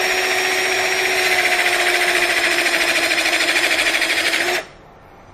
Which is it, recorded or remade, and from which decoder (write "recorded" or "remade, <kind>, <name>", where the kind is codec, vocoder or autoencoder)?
recorded